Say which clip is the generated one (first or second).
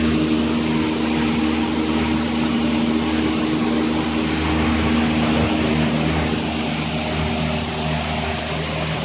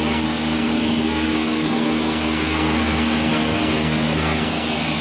second